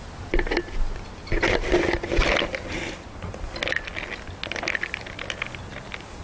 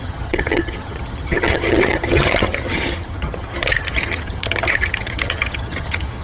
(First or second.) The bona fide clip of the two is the first